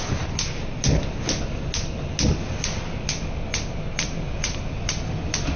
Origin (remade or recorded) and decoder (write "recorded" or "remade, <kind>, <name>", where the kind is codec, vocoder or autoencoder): recorded